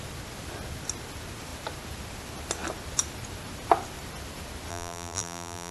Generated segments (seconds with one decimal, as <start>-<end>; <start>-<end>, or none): 4.7-5.7